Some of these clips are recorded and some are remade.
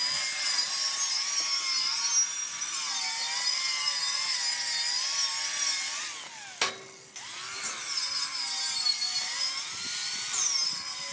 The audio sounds recorded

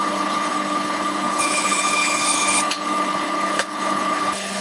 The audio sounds remade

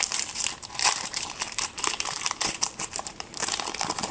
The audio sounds remade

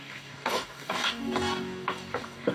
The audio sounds remade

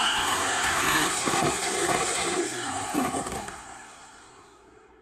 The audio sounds remade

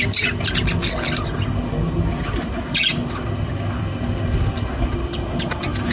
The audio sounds recorded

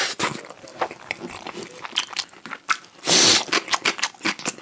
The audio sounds recorded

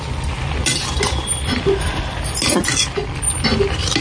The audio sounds recorded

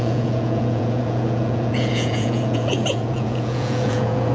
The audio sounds remade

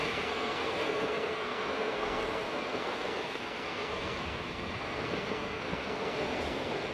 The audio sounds remade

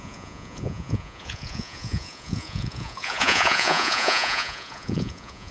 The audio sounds remade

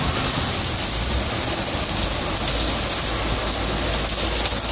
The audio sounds recorded